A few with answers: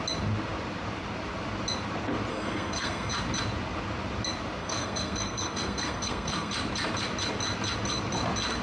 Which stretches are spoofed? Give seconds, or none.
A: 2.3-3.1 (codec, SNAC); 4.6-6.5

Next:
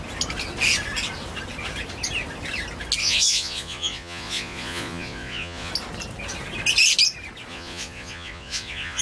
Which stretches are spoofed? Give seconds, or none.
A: 3.0-5.7 (vocoder, Vocos); 7.5-9.0

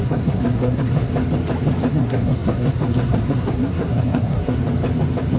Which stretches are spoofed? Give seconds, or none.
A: 0.0-1.1 (codec, SNAC); 1.9-4.6

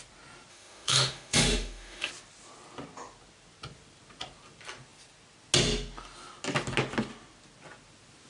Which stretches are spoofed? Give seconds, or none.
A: 0.5-2.1 (autoencoder, DAC-VAE)

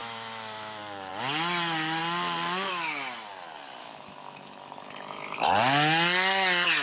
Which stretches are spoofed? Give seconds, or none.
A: 0.0-1.1 (autoencoder, DAC-VAE); 3.8-5.4

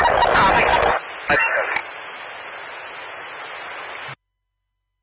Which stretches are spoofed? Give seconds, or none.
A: none

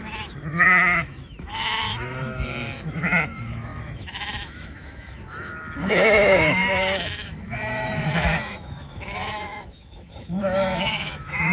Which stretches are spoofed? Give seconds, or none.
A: 0.0-11.5 (autoencoder, DAC-VAE)